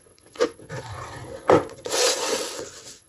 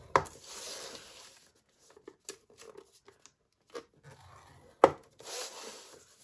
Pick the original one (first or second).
second